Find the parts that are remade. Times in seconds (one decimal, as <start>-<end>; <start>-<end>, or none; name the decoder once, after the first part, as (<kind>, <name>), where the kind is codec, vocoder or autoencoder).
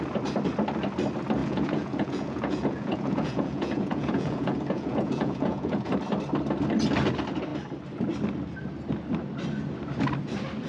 1.4-5.9 (vocoder, Vocos)